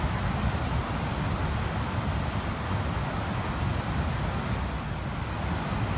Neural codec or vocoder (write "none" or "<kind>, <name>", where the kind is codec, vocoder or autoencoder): none